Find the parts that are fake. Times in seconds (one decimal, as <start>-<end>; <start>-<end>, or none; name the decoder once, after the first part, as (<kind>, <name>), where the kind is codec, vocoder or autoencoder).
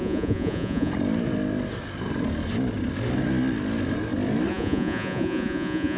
0.0-0.9 (vocoder, Vocos); 4.5-6.0